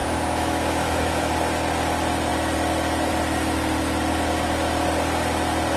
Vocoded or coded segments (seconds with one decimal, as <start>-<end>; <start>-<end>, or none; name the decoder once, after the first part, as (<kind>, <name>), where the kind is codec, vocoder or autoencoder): 0.0-1.3 (autoencoder, DAC-VAE)